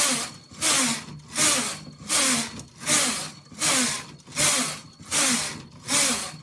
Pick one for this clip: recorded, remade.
recorded